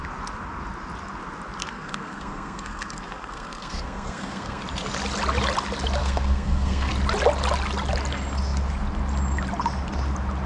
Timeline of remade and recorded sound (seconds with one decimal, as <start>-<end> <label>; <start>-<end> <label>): 0.0-1.6 recorded; 1.6-4.6 remade; 4.6-6.0 recorded; 6.0-6.9 remade; 6.9-10.5 recorded